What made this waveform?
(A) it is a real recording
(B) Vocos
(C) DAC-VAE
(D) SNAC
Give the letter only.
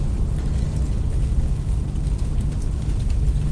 A